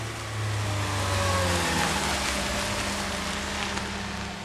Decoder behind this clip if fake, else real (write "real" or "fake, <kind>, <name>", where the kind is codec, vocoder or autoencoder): real